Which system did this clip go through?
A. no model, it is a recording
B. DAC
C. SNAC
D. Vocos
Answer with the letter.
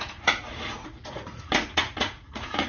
D